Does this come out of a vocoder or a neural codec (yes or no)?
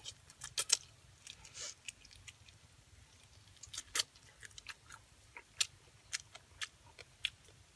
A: no